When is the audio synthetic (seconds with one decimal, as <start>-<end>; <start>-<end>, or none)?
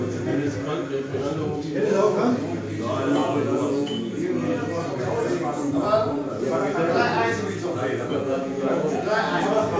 3.2-4.1; 8.1-9.3